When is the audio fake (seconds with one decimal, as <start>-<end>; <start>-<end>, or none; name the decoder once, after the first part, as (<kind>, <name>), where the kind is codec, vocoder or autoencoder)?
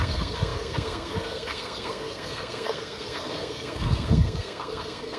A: 0.0-5.2 (codec, SNAC)